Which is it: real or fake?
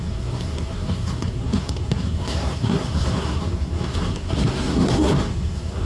fake